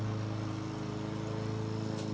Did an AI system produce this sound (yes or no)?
no